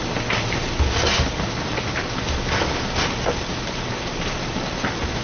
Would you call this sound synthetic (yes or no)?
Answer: no